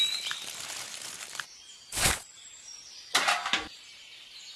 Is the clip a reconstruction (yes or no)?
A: yes